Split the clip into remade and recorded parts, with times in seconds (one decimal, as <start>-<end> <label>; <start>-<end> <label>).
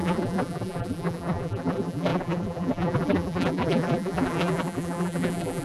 0.0-5.6 remade